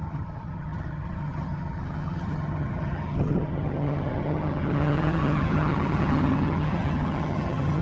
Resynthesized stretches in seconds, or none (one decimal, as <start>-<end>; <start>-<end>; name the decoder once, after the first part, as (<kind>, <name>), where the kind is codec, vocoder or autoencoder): 0.0-7.8 (vocoder, HiFi-GAN)